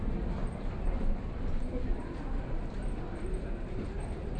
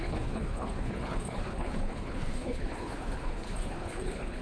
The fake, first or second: second